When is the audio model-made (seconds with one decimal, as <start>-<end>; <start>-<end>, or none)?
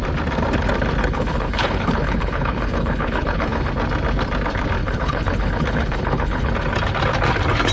1.0-3.7; 4.8-6.5